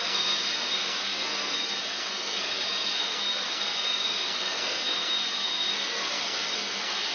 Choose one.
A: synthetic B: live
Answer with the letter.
A